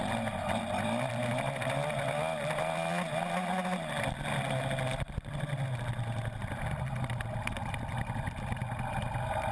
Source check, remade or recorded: recorded